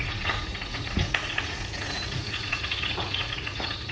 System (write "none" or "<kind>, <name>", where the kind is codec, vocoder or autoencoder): vocoder, Vocos